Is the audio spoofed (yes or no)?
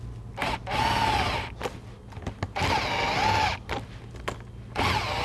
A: no